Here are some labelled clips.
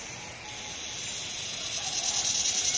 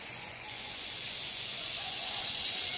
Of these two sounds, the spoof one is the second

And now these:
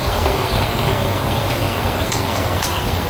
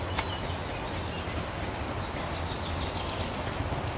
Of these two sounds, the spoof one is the first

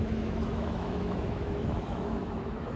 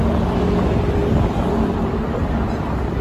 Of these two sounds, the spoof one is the first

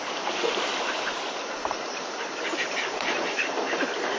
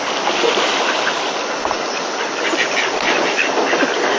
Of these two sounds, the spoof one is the first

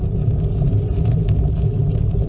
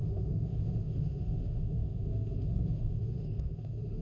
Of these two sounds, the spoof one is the second